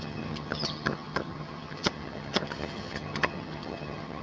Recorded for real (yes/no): no